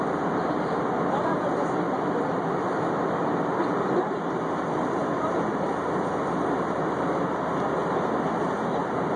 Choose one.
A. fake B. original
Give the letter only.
B